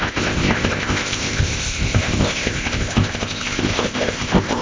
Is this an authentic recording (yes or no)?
no